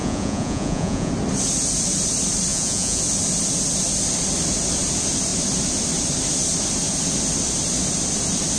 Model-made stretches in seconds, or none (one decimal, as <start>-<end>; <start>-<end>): 0.0-1.1; 2.5-3.0